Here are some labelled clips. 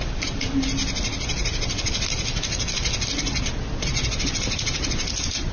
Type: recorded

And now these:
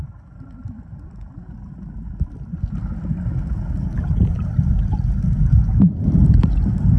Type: recorded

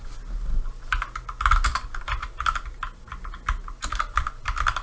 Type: recorded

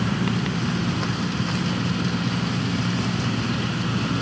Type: recorded